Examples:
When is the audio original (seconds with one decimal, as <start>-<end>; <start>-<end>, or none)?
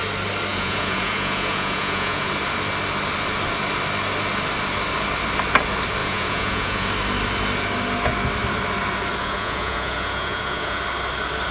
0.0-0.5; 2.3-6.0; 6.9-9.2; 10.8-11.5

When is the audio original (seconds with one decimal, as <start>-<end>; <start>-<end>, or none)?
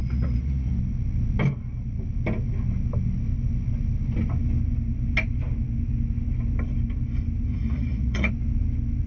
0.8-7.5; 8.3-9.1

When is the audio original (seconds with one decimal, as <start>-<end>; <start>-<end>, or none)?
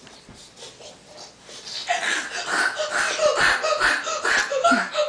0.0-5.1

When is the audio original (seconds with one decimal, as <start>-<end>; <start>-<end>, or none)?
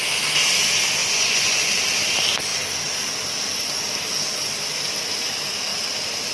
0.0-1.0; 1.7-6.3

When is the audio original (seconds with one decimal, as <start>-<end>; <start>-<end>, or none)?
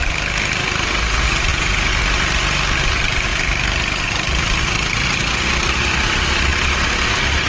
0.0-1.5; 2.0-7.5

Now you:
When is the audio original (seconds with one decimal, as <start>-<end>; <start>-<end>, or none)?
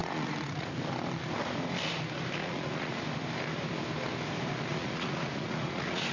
0.7-2.4; 3.0-4.7